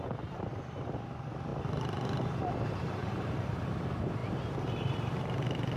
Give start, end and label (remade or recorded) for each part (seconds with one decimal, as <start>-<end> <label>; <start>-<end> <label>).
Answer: 0.0-1.5 remade; 1.5-2.7 recorded; 2.7-5.8 remade